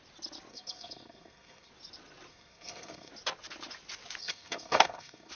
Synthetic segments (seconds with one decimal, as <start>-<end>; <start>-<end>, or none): 0.5-1.7; 2.3-3.1; 4.2-5.3